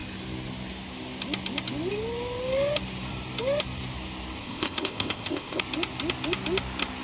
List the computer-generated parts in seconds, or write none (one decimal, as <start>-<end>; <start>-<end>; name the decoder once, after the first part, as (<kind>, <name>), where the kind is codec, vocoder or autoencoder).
4.4-5.6 (codec, ZipCodec)